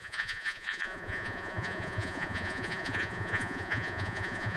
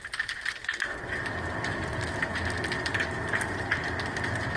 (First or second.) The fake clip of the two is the first